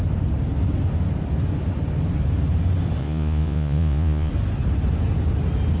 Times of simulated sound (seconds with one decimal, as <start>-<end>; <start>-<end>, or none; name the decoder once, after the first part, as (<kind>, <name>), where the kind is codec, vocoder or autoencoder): 3.0-4.3 (vocoder, Vocos)